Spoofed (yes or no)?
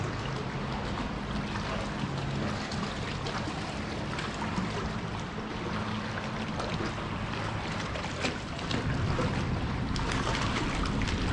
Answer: no